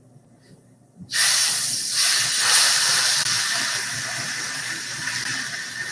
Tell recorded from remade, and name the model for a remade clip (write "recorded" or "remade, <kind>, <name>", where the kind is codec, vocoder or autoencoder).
remade, vocoder, BigVGAN v2